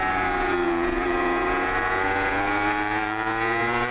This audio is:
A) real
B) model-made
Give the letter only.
B